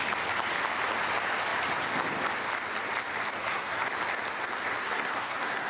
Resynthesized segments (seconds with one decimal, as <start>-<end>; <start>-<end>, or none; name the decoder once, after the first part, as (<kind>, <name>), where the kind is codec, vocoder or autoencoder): 3.4-3.9 (codec, SNAC); 4.8-5.7